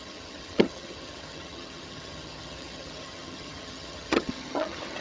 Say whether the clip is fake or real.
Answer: fake